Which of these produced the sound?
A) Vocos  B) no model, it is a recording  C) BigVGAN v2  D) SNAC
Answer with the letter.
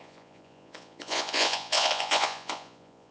A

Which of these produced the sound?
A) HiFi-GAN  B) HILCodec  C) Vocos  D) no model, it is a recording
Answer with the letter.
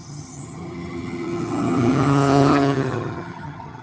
A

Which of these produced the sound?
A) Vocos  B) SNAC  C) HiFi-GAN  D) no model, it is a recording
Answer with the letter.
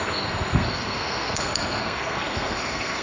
B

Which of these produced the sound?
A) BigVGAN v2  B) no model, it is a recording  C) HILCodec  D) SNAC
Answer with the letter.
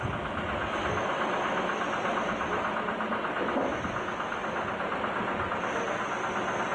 B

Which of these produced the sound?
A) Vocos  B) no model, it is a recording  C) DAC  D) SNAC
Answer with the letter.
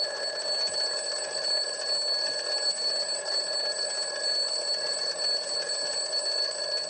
B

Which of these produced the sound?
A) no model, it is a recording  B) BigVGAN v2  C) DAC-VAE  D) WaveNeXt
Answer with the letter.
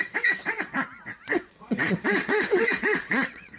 D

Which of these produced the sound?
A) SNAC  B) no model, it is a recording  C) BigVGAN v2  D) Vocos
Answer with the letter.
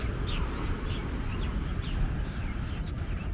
B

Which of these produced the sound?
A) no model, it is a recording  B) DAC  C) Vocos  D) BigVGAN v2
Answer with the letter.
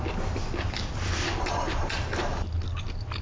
A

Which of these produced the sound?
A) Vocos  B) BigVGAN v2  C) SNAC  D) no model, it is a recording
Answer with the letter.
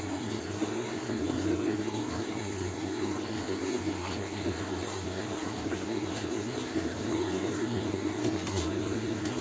C